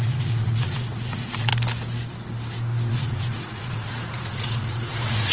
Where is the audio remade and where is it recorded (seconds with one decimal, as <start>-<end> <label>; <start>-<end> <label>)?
0.0-1.5 remade; 1.5-2.9 recorded; 2.9-5.3 remade